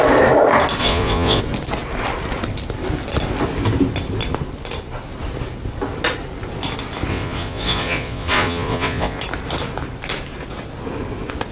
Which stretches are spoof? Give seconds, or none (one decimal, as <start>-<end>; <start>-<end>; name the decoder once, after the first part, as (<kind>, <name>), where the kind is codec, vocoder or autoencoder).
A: 0.8-1.4 (vocoder, Vocos); 7.1-9.2